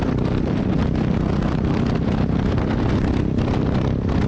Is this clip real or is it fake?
fake